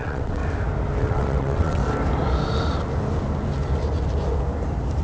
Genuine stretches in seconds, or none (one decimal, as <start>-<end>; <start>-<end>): 0.4-1.0; 1.8-5.0